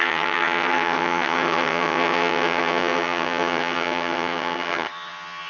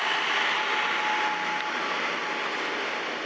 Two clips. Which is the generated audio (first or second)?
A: first